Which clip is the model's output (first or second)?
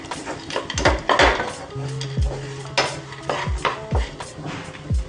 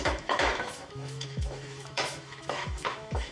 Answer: second